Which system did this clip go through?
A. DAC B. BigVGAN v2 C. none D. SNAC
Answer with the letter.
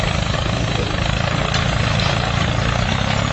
C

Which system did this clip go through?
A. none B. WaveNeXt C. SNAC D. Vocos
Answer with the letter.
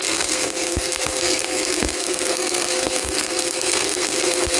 C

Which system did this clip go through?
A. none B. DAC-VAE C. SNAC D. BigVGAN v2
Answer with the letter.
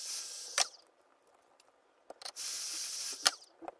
A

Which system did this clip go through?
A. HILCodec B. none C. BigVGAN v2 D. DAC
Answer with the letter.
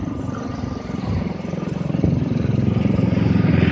C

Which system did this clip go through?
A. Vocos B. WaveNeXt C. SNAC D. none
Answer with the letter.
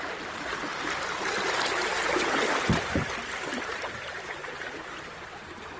D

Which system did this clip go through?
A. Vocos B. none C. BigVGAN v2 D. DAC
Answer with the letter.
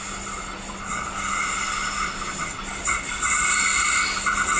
B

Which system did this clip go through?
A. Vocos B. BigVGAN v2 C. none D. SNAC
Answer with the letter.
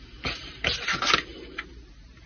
C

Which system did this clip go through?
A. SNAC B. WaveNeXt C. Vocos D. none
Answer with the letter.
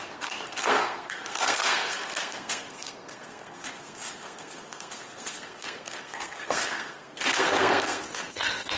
A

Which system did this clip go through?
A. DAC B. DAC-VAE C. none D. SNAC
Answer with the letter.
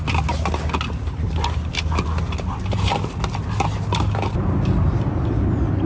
C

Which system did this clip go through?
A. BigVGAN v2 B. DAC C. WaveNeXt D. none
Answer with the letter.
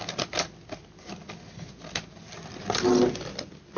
D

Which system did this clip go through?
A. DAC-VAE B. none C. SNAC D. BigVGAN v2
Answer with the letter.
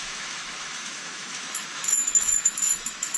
A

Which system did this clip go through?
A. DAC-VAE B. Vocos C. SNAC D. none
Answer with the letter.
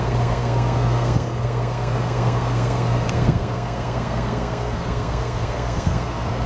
C